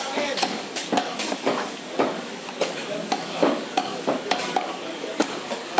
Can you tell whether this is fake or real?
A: fake